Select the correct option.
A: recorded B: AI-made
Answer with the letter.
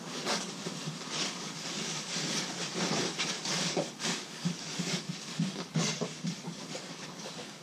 B